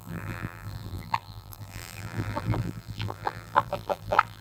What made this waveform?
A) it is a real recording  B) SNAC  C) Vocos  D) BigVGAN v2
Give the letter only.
D